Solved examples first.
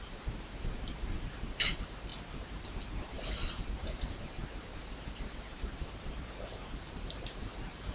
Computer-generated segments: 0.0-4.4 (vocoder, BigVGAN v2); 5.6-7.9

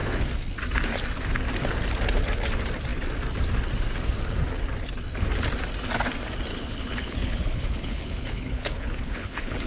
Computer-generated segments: 6.5-9.7 (codec, HILCodec)

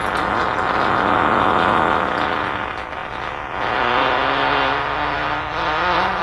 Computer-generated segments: none

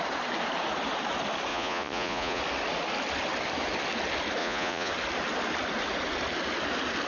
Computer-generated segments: 1.5-2.4 (vocoder, Vocos); 4.4-4.9

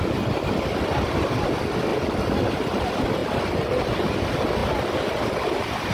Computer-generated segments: none

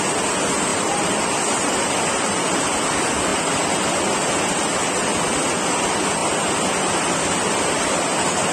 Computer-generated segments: 0.7-1.9 (vocoder, BigVGAN v2)

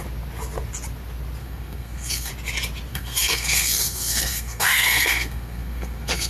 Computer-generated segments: 1.4-2.3 (codec, SNAC); 2.9-6.3

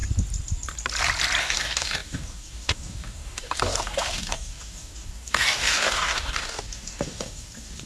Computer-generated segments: 1.4-7.9 (codec, DAC)